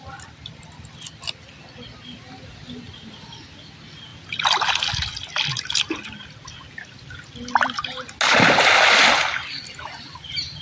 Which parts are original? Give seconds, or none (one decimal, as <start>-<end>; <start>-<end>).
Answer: 0.0-10.6